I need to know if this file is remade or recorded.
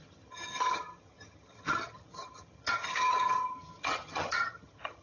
remade